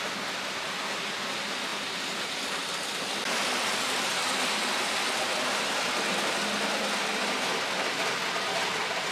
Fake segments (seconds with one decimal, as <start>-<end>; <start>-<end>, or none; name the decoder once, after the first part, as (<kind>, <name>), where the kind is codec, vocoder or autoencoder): none